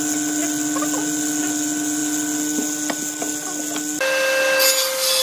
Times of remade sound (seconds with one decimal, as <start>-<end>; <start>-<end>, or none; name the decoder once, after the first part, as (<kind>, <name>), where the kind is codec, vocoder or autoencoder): none